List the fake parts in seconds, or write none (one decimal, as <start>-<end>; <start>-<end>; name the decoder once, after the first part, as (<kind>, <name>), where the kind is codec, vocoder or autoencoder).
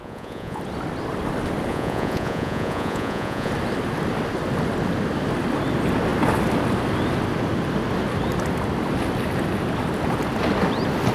0.0-0.6 (vocoder, Vocos); 1.7-3.5